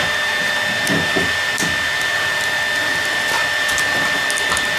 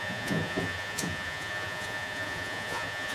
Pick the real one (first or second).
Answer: first